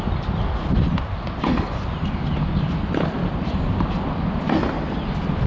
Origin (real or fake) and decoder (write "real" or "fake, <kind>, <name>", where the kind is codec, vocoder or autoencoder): real